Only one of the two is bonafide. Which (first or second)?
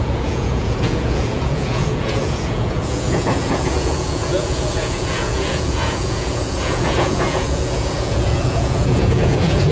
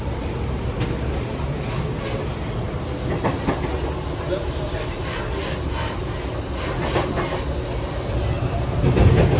second